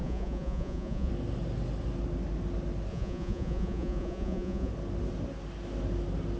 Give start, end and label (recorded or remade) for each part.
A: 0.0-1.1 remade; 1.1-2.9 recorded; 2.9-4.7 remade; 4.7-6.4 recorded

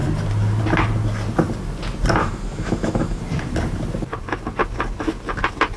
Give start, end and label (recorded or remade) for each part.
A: 0.0-2.2 recorded; 2.2-3.2 remade; 3.2-5.8 recorded

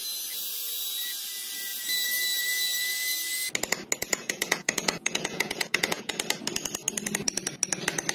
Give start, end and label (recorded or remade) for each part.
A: 0.0-4.0 recorded; 4.0-6.1 remade; 6.1-8.1 recorded

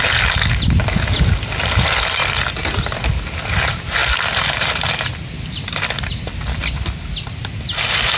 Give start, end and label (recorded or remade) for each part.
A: 0.0-8.2 recorded

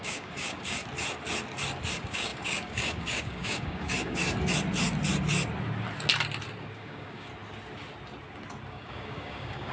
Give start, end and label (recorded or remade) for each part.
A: 0.0-0.8 remade; 0.8-1.9 recorded; 1.9-4.2 remade; 4.2-6.6 recorded; 6.6-7.3 remade; 7.3-8.7 recorded; 8.7-9.7 remade

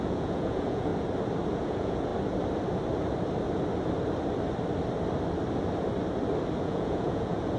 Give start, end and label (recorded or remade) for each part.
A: 0.0-0.9 remade; 0.9-1.5 recorded; 1.5-2.1 remade; 2.1-6.6 recorded; 6.6-7.6 remade

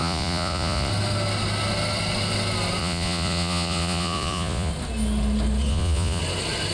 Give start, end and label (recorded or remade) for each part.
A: 0.0-0.9 remade; 0.9-2.8 recorded; 2.8-4.7 remade; 4.7-5.7 recorded; 5.7-6.2 remade; 6.2-6.7 recorded